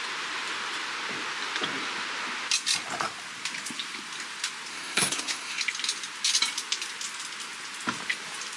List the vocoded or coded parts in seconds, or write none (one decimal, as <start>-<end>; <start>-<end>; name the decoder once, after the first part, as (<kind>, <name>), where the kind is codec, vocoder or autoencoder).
4.7-5.6 (codec, SNAC)